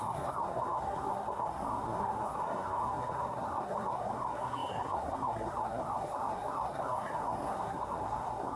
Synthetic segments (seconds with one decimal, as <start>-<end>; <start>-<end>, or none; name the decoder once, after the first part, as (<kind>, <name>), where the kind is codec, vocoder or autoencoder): 0.0-8.6 (codec, SNAC)